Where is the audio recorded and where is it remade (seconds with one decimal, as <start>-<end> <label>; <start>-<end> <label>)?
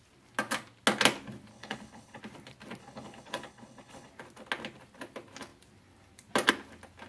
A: 0.0-1.5 recorded; 1.5-2.2 remade; 2.2-2.8 recorded; 2.8-4.1 remade; 4.1-7.1 recorded